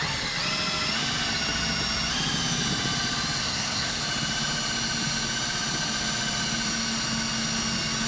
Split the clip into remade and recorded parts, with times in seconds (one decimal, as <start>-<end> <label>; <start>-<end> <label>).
0.0-3.4 recorded; 3.4-4.0 remade; 4.0-8.1 recorded